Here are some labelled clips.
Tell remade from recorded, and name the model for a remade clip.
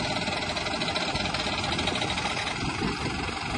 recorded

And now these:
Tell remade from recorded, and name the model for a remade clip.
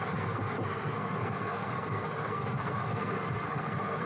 remade, codec, SNAC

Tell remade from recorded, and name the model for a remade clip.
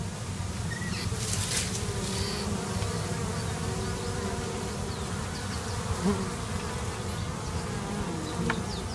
recorded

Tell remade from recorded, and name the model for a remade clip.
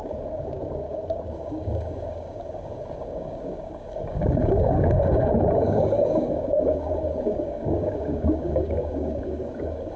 remade, codec, DAC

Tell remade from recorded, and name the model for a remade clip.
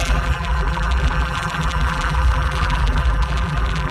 remade, vocoder, BigVGAN v2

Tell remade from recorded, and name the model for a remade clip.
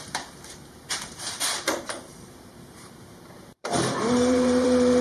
remade, vocoder, BigVGAN v2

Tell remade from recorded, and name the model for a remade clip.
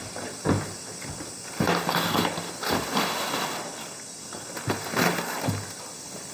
recorded